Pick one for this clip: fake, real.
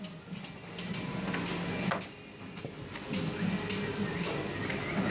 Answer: real